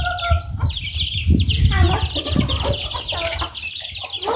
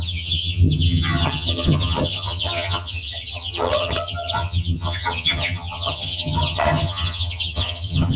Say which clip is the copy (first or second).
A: second